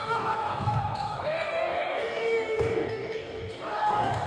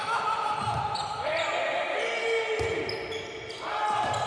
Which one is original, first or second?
second